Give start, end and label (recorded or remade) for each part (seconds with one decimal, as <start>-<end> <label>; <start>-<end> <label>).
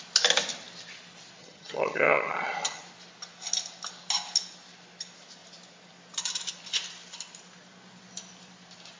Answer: 0.0-1.4 recorded; 1.4-2.8 remade; 2.8-9.0 recorded